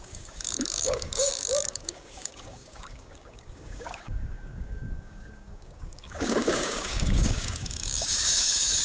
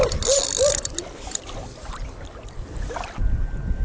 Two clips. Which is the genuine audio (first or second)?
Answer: second